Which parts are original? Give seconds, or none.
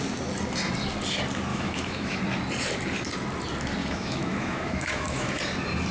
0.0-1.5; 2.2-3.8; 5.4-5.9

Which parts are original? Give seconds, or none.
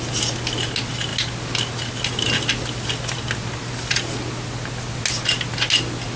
0.0-6.2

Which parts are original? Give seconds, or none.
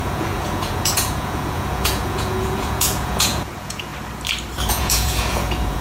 3.9-4.7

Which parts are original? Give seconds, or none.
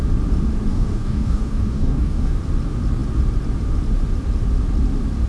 0.0-0.7; 2.4-5.3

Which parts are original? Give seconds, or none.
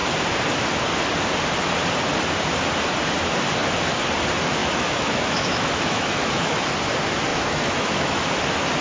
0.0-4.6; 6.7-7.3; 8.3-8.8